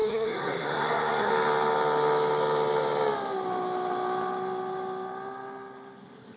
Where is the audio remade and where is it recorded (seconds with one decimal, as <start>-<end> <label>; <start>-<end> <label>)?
0.0-1.3 remade; 1.3-6.4 recorded